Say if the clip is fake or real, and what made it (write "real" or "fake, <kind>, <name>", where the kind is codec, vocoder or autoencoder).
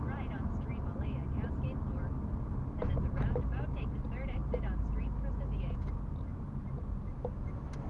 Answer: real